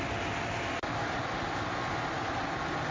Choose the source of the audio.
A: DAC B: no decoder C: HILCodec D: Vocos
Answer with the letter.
B